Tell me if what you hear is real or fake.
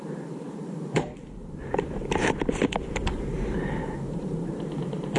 fake